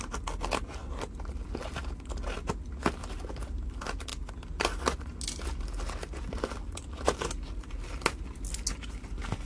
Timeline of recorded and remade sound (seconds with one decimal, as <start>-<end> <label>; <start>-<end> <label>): 0.0-9.5 recorded